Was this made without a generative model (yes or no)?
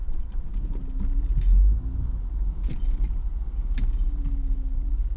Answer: yes